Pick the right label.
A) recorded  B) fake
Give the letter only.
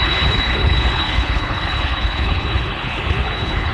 B